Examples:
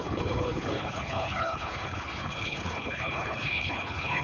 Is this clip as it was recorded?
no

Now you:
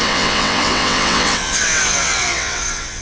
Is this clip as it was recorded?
no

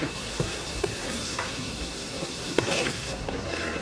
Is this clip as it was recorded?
no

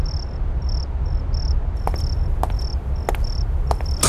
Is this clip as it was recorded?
yes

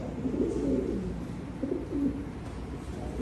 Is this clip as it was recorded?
yes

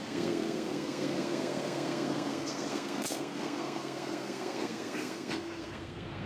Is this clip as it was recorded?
no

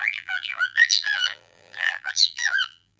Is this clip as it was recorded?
no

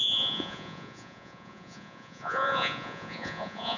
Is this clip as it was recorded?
no